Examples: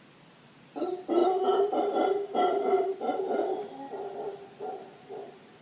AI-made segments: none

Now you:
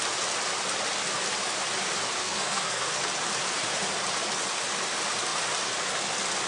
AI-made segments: 2.2-3.0 (codec, SNAC)

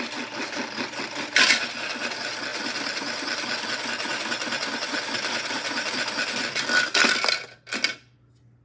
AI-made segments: none